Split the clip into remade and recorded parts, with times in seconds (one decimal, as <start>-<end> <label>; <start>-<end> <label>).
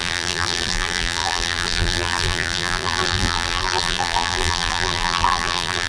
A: 0.0-5.9 remade